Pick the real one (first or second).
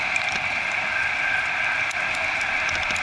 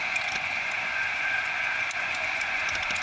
first